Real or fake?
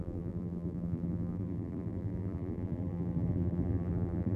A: fake